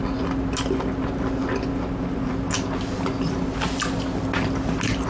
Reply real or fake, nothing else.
real